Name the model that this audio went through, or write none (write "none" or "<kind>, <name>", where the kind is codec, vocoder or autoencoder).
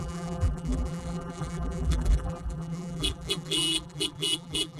vocoder, BigVGAN v2